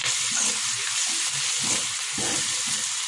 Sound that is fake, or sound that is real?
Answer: real